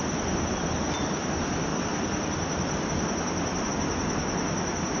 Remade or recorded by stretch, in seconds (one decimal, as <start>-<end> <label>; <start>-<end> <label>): 0.0-5.0 recorded